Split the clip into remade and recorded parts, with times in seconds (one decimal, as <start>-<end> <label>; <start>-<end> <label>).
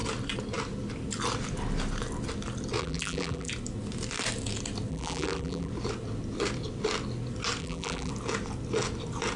0.0-2.8 recorded; 2.8-3.5 remade; 3.5-4.9 recorded; 4.9-5.7 remade; 5.7-7.6 recorded; 7.6-8.1 remade; 8.1-9.4 recorded